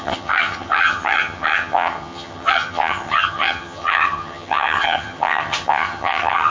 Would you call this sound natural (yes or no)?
no